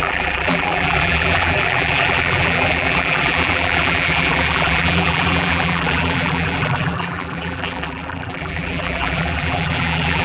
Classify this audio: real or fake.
fake